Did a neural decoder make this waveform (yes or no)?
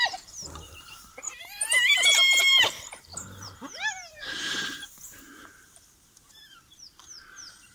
yes